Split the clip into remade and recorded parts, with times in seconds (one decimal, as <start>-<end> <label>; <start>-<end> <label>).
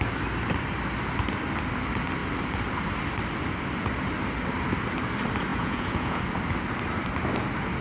0.0-5.5 recorded; 5.5-6.2 remade; 6.2-7.8 recorded